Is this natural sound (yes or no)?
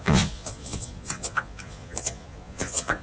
no